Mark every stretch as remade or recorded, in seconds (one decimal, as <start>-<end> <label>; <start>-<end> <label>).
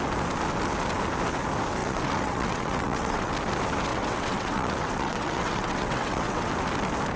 0.0-1.8 recorded; 1.8-3.3 remade; 3.3-3.9 recorded; 3.9-6.5 remade; 6.5-7.2 recorded